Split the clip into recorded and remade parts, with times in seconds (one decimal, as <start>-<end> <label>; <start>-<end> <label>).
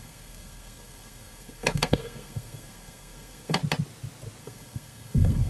0.0-3.6 remade; 3.6-4.4 recorded; 4.4-5.5 remade